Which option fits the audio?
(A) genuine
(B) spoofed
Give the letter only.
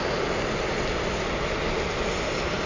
A